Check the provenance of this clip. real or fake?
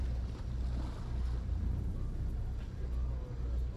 real